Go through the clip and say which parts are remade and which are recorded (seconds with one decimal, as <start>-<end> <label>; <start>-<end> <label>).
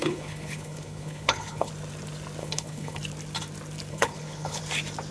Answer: 0.0-1.7 remade; 1.7-2.4 recorded; 2.4-3.0 remade; 3.0-3.9 recorded; 3.9-4.6 remade; 4.6-5.1 recorded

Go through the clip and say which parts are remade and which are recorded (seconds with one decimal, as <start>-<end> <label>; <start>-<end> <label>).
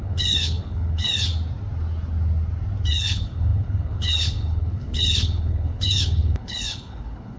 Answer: 0.0-1.3 remade; 1.3-2.9 recorded; 2.9-7.4 remade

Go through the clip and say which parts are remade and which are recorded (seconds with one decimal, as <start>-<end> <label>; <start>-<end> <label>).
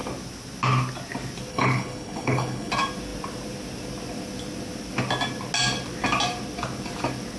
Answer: 0.0-1.5 recorded; 1.5-2.7 remade; 2.7-7.4 recorded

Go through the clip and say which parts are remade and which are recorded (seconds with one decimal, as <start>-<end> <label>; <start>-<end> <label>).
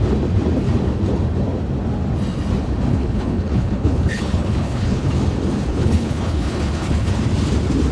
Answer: 0.0-2.9 recorded; 2.9-5.1 remade; 5.1-5.7 recorded; 5.7-7.1 remade; 7.1-7.9 recorded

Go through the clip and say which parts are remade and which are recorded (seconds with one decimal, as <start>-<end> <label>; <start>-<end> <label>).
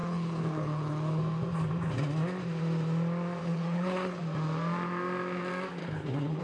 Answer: 0.0-1.2 remade; 1.2-3.4 recorded; 3.4-4.2 remade; 4.2-5.8 recorded; 5.8-6.4 remade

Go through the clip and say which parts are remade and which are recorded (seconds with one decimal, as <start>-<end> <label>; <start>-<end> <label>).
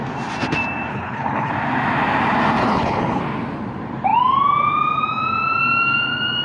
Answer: 0.0-0.9 recorded; 0.9-1.5 remade; 1.5-2.6 recorded; 2.6-3.2 remade; 3.2-6.4 recorded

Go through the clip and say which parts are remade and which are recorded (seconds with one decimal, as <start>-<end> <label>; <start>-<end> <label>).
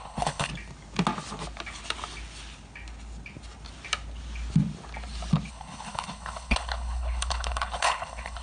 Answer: 0.0-0.5 remade; 0.5-5.5 recorded; 5.5-8.4 remade